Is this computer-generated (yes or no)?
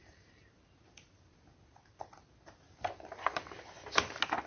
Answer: no